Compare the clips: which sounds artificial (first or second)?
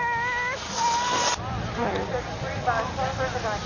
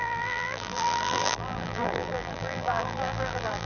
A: second